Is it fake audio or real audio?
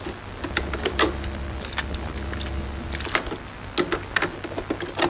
real